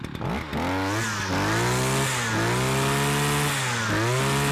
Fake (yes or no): no